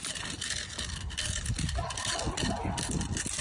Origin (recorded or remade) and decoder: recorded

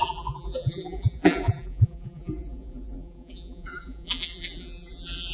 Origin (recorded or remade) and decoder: remade, vocoder, BigVGAN v2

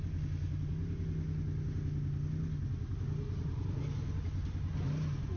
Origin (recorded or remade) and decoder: recorded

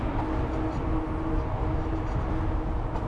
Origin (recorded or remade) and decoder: recorded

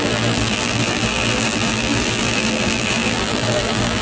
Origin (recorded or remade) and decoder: remade, vocoder, BigVGAN v2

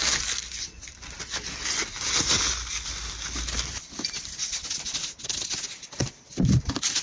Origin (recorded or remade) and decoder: recorded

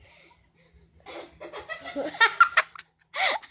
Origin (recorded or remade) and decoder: recorded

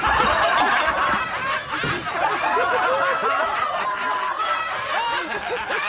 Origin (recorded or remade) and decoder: recorded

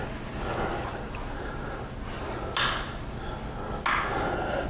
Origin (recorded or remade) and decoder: recorded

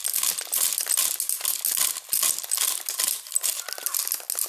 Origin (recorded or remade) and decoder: recorded